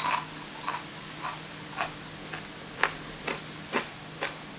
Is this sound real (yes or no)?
yes